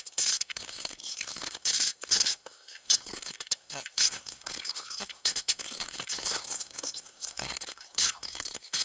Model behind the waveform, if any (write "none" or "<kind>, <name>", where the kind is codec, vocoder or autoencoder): codec, SNAC